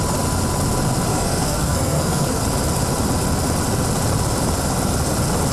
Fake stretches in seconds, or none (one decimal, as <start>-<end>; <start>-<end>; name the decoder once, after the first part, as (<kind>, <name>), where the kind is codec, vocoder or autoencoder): 1.1-2.4 (codec, SNAC)